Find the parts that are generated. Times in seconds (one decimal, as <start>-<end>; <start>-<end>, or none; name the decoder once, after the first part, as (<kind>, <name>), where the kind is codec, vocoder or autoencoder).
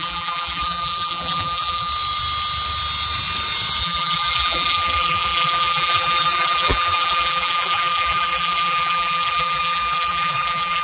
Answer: 0.0-1.9 (vocoder, BigVGAN v2); 3.8-10.8